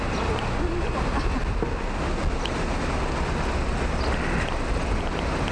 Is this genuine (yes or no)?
yes